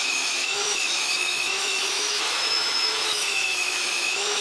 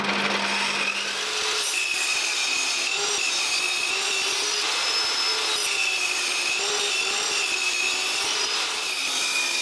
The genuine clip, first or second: second